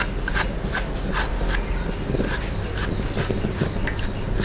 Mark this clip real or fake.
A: real